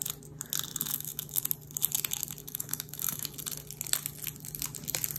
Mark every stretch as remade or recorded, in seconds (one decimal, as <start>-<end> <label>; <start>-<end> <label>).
0.0-0.7 recorded; 0.7-1.4 remade; 1.4-2.4 recorded; 2.4-3.3 remade; 3.3-5.2 recorded